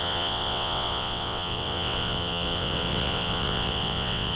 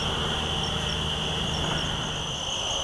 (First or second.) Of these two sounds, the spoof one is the first